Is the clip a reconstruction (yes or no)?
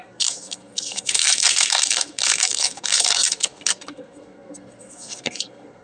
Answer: yes